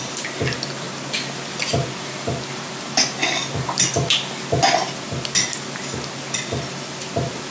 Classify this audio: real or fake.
real